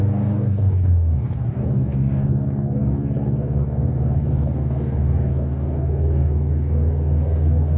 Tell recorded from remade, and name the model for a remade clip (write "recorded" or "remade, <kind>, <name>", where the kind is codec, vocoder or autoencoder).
remade, codec, DAC